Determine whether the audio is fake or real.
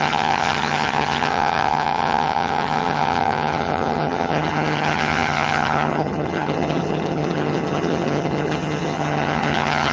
fake